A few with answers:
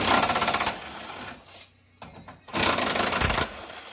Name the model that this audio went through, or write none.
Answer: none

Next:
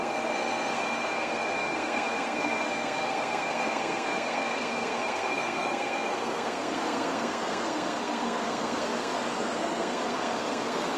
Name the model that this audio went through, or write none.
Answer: codec, SNAC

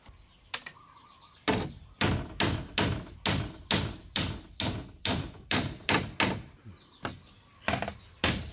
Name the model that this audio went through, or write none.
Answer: none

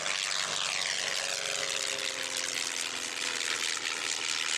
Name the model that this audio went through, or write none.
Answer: none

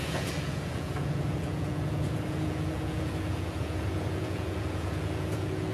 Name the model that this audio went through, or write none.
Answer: vocoder, Vocos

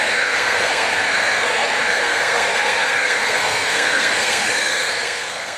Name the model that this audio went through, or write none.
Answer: codec, SNAC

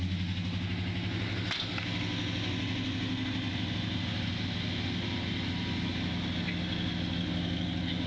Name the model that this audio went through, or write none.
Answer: none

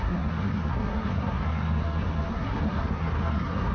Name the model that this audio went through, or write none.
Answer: codec, SNAC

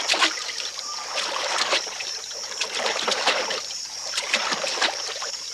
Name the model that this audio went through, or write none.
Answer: vocoder, BigVGAN v2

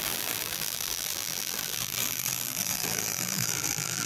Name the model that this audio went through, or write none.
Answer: vocoder, BigVGAN v2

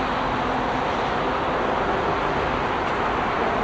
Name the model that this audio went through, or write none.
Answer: none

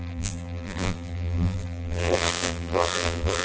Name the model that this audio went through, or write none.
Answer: vocoder, BigVGAN v2